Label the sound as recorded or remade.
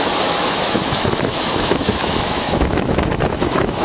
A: remade